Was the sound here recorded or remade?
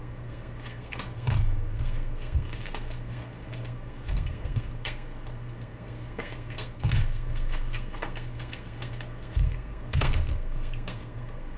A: remade